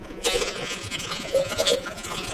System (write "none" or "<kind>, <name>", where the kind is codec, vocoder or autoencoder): vocoder, Vocos